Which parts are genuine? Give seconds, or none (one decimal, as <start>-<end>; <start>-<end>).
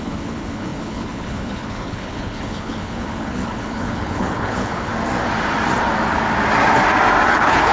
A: 4.9-7.3